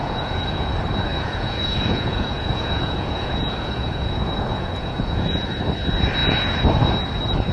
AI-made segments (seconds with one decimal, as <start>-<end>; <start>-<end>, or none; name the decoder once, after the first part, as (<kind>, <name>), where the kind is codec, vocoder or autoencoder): 0.0-0.7 (vocoder, Vocos); 1.1-5.6